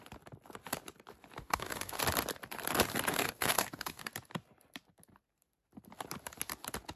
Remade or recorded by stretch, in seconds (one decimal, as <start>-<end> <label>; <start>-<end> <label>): 0.0-1.4 recorded; 1.4-2.0 remade; 2.0-3.1 recorded; 3.1-4.1 remade; 4.1-7.0 recorded